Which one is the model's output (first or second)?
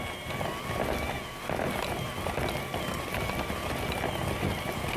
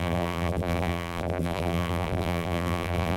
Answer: second